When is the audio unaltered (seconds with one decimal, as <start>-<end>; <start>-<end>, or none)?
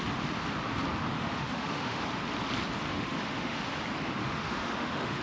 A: 0.0-1.1; 2.0-2.9; 3.6-4.2